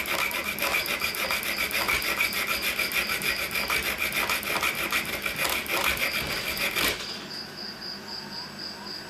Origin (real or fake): real